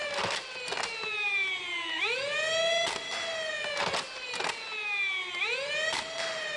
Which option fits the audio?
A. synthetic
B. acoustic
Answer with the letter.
B